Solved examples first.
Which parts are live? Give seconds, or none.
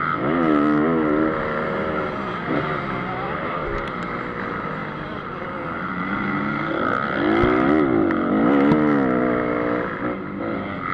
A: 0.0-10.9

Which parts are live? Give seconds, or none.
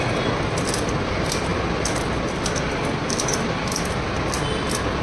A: 0.0-5.0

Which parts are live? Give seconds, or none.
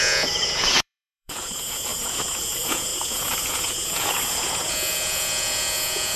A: none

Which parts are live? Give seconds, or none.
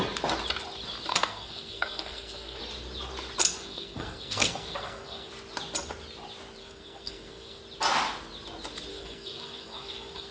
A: 0.0-1.1; 2.6-3.4; 5.3-6.6; 7.6-8.9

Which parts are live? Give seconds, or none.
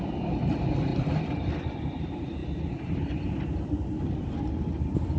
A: 0.0-5.2